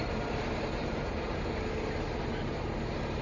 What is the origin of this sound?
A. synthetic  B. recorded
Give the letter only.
B